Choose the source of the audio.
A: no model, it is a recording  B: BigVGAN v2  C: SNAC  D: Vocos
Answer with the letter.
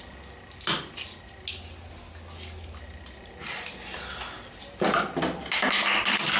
A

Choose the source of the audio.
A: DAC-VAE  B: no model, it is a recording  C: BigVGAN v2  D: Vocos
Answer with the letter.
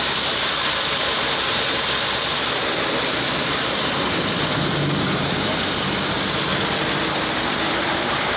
B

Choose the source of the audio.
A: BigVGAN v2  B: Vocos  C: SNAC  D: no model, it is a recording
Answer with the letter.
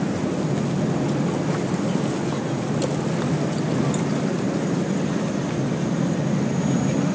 D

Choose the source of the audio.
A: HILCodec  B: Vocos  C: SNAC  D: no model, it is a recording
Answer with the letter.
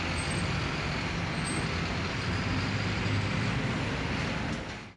D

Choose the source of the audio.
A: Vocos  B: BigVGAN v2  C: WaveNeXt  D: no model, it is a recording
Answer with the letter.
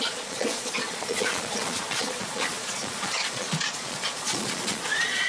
A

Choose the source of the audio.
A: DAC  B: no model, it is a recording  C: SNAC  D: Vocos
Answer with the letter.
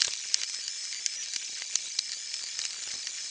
B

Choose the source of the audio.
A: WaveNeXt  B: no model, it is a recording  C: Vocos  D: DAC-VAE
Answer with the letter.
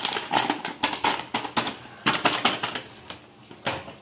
B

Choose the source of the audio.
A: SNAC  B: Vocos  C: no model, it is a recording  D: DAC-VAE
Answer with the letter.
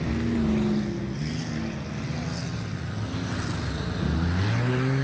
C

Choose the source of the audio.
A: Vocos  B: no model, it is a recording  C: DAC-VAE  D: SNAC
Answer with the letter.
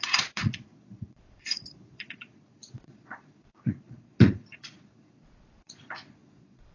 A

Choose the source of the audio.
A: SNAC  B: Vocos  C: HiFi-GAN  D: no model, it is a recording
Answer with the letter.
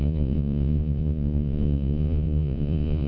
B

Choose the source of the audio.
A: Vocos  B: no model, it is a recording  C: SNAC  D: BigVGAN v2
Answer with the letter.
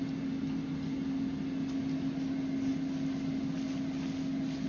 B